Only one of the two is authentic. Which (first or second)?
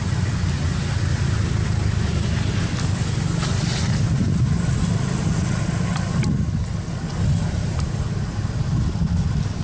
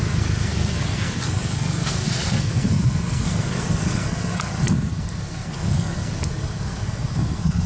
first